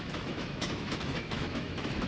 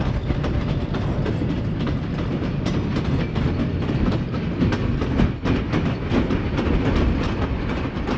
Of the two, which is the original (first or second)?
second